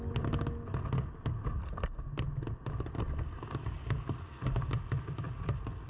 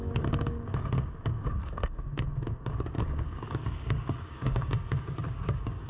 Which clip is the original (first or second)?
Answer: first